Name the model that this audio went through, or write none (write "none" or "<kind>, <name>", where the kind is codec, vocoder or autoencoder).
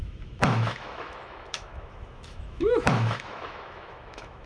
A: autoencoder, DAC-VAE